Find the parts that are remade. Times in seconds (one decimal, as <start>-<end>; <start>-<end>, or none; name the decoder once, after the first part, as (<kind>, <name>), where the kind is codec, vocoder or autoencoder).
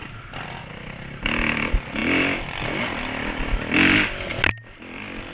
none